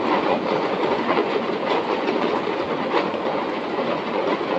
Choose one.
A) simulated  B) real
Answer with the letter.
A